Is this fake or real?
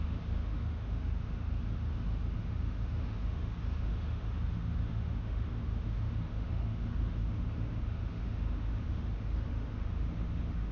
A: fake